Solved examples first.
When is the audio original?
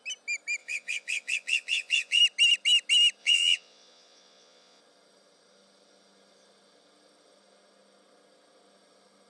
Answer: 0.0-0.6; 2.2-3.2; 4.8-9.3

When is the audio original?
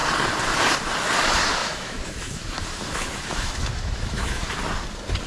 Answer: 0.0-1.6; 4.5-5.3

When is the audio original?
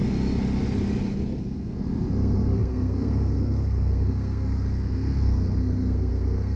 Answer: 0.0-1.4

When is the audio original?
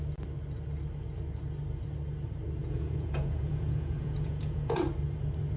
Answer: 0.0-2.6; 4.8-5.6